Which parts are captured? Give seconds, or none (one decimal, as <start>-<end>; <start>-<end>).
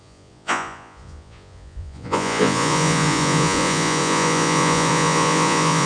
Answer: none